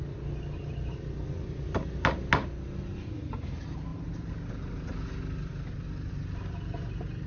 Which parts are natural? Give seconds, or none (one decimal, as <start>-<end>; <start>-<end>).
0.0-7.3